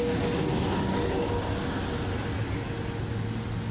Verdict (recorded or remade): recorded